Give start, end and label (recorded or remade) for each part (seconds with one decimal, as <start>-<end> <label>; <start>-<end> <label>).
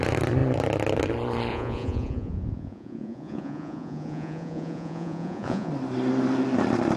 0.0-1.5 recorded; 1.5-5.7 remade; 5.7-7.0 recorded